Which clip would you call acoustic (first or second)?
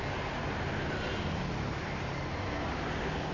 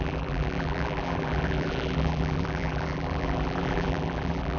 first